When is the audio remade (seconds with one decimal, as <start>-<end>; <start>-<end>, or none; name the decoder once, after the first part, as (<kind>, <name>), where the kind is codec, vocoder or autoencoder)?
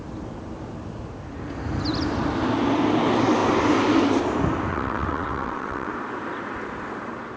4.7-5.9 (vocoder, WaveNeXt)